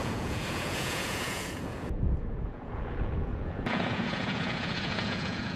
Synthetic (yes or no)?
yes